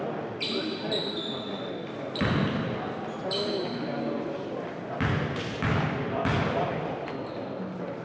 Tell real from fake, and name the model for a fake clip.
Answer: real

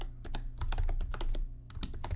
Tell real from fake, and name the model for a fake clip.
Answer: real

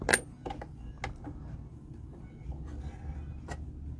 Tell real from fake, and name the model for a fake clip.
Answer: real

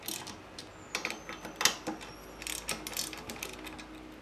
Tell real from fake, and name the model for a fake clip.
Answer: real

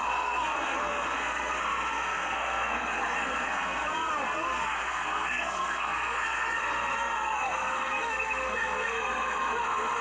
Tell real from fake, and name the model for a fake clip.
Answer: fake, codec, SNAC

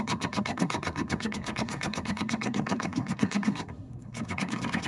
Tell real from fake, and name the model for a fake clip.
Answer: fake, codec, SNAC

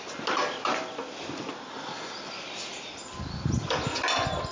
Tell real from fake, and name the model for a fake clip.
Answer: real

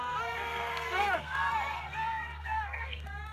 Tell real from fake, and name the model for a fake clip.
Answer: fake, codec, SNAC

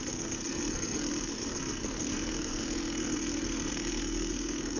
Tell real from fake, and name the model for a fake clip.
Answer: fake, codec, SNAC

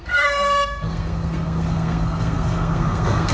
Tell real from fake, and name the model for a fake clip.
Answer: fake, codec, SNAC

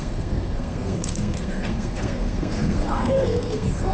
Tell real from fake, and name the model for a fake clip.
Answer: fake, codec, SNAC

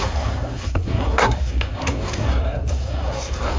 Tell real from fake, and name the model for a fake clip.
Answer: fake, codec, SNAC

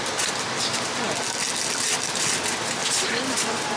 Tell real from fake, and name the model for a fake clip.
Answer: real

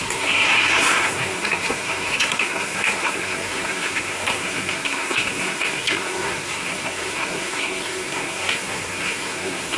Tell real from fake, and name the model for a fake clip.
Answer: fake, codec, SNAC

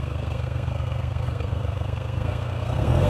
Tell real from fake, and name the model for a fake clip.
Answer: fake, codec, SNAC